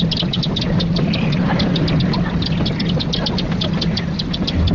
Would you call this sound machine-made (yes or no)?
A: no